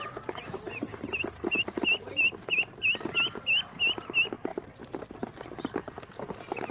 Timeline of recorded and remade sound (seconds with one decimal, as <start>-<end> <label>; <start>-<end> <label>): 0.0-6.7 recorded